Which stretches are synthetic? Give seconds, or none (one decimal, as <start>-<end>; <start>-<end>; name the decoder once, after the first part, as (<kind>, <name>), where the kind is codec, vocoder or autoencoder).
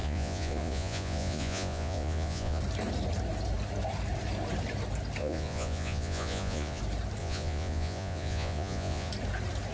0.0-2.6 (vocoder, Vocos); 5.2-6.8; 7.2-9.1